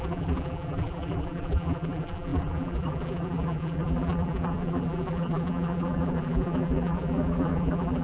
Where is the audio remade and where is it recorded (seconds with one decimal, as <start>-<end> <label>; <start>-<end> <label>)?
0.0-8.0 remade